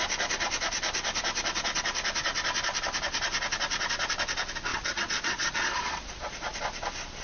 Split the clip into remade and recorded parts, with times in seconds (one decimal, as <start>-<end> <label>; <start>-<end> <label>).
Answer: 0.0-4.7 recorded; 4.7-6.6 remade; 6.6-7.2 recorded